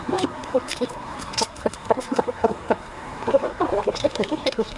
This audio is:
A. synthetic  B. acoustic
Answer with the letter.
A